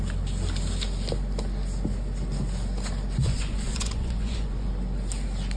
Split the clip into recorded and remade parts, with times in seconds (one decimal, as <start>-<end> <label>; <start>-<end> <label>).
0.0-3.2 recorded; 3.2-4.7 remade; 4.7-5.6 recorded